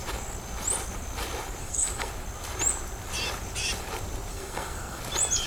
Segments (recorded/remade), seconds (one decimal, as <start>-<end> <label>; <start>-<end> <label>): 0.0-1.6 recorded; 1.6-2.1 remade; 2.1-4.3 recorded; 4.3-5.0 remade; 5.0-5.5 recorded